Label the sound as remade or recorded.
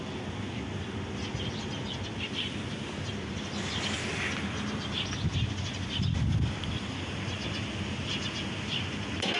recorded